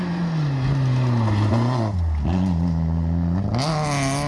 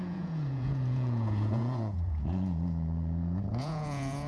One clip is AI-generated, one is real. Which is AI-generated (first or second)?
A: second